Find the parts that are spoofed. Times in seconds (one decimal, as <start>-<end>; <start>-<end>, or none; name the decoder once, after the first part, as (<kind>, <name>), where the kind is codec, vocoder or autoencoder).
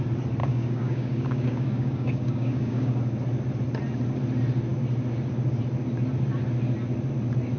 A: 0.4-3.0 (codec, DAC)